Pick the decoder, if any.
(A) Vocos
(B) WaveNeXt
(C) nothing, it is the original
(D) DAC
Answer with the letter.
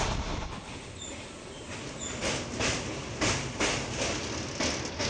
C